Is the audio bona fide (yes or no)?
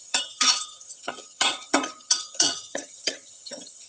no